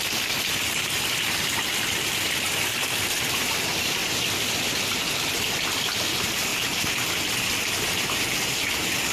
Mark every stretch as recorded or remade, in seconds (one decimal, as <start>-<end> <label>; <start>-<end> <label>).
0.0-9.1 recorded